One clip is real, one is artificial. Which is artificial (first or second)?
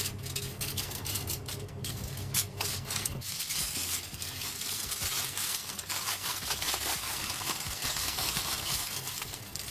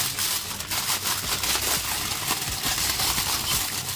first